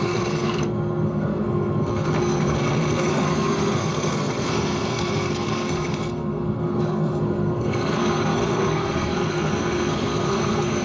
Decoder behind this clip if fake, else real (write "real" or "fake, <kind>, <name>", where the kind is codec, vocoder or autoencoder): fake, codec, SNAC